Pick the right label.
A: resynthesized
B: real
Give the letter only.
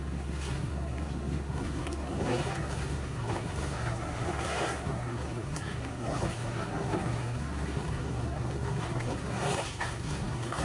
A